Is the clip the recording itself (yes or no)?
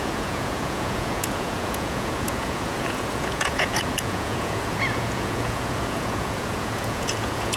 no